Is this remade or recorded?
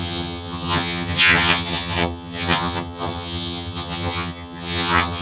remade